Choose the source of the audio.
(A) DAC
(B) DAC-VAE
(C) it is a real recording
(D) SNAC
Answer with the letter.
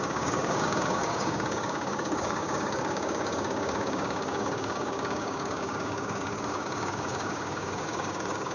A